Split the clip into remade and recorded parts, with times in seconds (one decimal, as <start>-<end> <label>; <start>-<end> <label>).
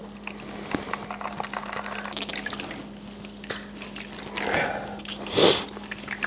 0.0-6.3 recorded